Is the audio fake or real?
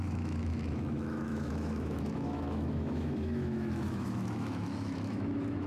fake